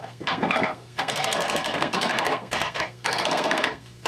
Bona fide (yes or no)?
no